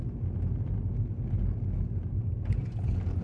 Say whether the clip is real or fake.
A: real